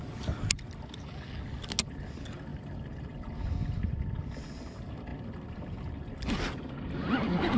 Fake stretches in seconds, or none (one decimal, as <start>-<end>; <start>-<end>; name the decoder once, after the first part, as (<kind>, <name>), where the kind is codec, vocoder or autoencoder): none